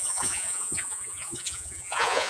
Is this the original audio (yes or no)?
no